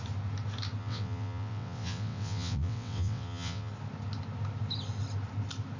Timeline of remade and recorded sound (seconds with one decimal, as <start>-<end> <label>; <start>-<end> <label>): 0.0-0.8 recorded; 0.8-3.7 remade; 3.7-5.8 recorded